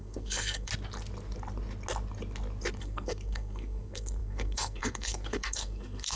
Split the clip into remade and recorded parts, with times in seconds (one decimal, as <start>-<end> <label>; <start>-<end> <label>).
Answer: 0.0-0.7 remade; 0.7-2.8 recorded; 2.8-6.2 remade